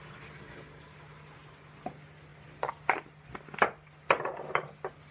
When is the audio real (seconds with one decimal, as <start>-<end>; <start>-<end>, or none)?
0.0-5.1